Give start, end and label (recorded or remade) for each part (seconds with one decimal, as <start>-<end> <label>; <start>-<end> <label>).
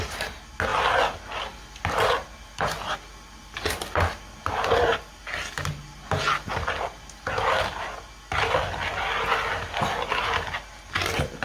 0.0-11.4 recorded